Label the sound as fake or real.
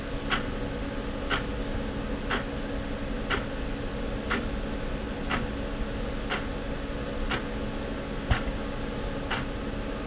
real